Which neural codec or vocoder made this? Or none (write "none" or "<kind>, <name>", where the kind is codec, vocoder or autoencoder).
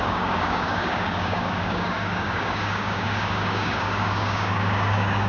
codec, DAC